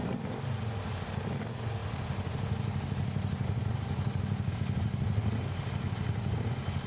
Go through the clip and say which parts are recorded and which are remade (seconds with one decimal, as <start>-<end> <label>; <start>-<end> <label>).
0.0-6.9 recorded